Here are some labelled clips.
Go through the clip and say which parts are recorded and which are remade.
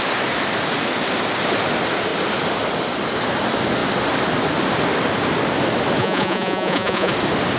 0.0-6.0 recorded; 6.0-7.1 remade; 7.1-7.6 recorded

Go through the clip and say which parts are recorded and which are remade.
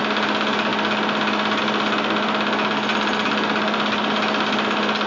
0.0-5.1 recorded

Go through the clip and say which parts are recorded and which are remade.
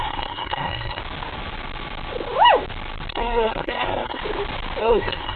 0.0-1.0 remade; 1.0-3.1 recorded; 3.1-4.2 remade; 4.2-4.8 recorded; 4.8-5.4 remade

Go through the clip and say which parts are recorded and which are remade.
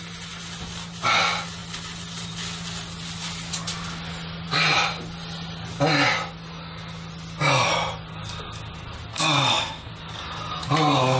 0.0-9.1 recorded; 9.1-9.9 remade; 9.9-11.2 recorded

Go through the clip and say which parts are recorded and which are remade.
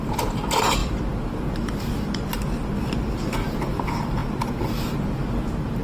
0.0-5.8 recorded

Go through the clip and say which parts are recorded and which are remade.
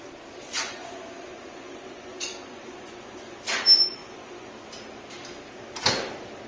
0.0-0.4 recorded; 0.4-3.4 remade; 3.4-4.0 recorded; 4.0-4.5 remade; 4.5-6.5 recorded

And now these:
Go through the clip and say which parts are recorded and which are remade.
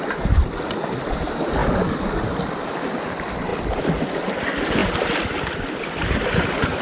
0.0-6.8 recorded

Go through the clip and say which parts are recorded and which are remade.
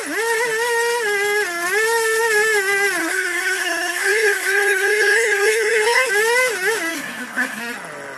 0.0-3.0 recorded; 3.0-6.1 remade; 6.1-6.9 recorded; 6.9-7.6 remade; 7.6-8.2 recorded